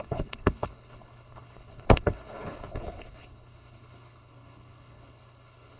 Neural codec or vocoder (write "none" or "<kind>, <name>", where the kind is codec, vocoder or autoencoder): codec, HILCodec